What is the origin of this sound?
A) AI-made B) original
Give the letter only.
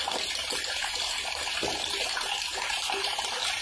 A